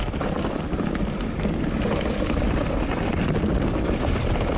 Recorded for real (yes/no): yes